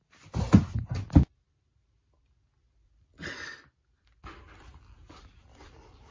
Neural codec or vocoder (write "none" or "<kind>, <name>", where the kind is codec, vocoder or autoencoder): vocoder, BigVGAN v2